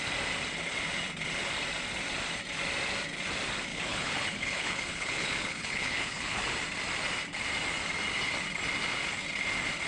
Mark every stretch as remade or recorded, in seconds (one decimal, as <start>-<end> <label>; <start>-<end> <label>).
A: 0.0-3.7 recorded; 3.7-6.4 remade; 6.4-9.9 recorded